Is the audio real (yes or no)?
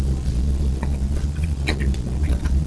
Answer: no